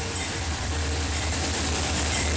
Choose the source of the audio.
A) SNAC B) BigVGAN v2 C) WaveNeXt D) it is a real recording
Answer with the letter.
B